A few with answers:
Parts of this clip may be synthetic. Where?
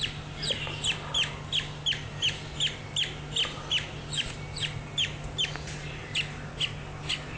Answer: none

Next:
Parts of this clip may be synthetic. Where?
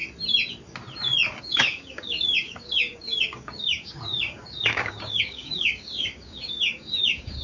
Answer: 1.4-7.4 (codec, DAC)